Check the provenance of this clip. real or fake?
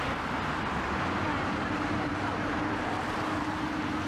real